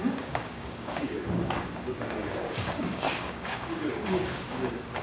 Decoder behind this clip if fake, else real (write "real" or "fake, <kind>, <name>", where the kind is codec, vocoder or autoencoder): fake, codec, DAC